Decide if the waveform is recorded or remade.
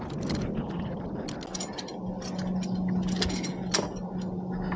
recorded